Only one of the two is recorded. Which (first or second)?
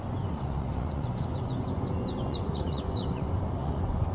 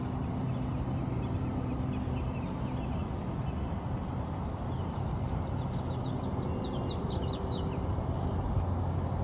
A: second